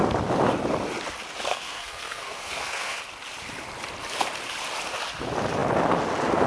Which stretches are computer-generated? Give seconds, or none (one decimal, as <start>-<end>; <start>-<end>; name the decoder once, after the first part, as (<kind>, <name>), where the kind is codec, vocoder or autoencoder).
1.5-3.0 (codec, SNAC)